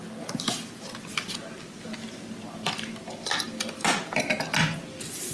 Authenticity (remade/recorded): recorded